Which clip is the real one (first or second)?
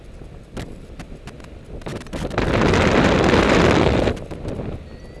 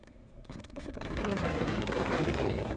first